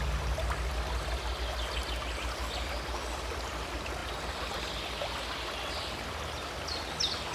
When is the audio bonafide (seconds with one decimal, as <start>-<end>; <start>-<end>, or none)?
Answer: 0.0-7.3